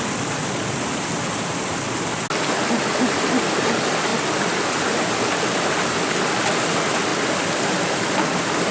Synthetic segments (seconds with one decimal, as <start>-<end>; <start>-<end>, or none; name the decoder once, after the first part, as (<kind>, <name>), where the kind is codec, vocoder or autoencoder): none